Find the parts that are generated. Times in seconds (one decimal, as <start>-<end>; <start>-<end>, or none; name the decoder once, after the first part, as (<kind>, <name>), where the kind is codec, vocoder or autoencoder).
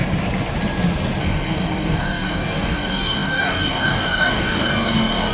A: 1.2-5.3 (codec, DAC)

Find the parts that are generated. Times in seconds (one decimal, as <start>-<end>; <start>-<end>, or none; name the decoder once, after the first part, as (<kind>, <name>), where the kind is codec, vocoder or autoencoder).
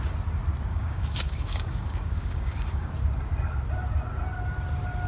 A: 0.7-2.9 (codec, DAC)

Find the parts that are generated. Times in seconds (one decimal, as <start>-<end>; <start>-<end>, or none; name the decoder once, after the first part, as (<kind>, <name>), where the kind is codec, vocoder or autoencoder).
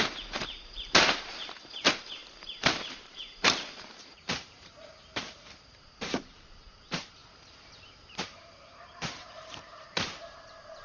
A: 0.0-7.2 (vocoder, BigVGAN v2); 8.2-10.8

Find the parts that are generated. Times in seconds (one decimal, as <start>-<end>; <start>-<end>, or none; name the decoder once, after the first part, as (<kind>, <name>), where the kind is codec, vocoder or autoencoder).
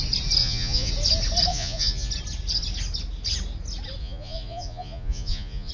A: 0.4-0.9 (vocoder, Vocos); 1.5-2.1; 4.0-5.7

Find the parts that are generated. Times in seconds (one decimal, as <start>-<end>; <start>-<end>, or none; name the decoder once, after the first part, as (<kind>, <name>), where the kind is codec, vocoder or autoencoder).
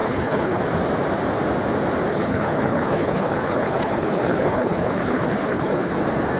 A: 0.0-0.6 (codec, HILCodec); 2.1-5.9